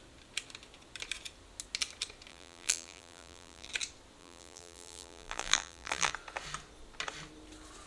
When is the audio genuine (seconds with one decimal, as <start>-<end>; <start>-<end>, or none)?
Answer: 0.0-2.3; 3.7-4.2; 6.1-7.9